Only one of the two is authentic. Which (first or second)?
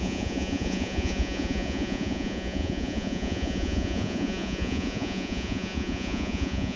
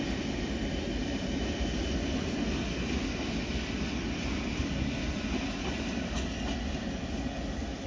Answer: second